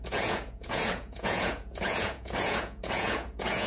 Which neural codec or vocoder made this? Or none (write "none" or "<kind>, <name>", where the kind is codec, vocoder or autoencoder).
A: vocoder, Vocos